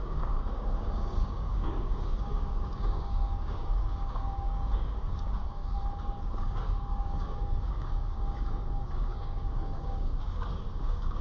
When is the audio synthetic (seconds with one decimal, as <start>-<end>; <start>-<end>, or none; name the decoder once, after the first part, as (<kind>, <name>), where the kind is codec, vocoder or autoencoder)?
0.0-5.6 (codec, DAC); 6.2-11.2